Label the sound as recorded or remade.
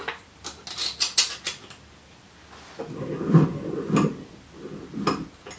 recorded